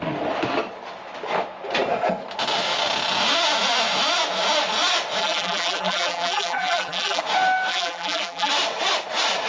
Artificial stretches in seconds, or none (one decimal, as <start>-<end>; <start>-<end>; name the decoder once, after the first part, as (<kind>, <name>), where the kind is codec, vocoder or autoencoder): 5.2-7.2 (vocoder, BigVGAN v2); 7.7-8.5